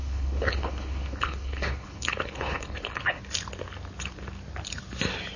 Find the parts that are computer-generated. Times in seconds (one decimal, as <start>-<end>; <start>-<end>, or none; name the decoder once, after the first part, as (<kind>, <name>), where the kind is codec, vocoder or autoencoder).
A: 0.0-3.2 (codec, HILCodec)

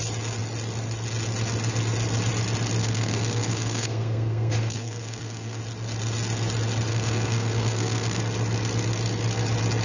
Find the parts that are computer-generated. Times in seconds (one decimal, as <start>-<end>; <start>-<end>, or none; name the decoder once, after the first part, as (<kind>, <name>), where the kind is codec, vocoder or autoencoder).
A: 2.8-5.6 (codec, SNAC); 6.9-8.2

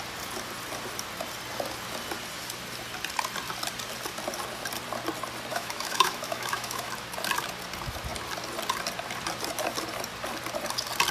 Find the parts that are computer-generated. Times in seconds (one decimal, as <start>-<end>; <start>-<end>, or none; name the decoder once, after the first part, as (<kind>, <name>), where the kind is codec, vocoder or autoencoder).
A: 5.5-6.9 (autoencoder, DAC-VAE)

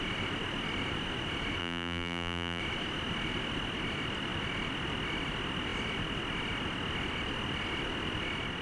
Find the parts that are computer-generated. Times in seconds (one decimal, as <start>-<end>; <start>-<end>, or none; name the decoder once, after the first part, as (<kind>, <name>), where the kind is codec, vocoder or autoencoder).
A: 1.6-2.6 (vocoder, BigVGAN v2)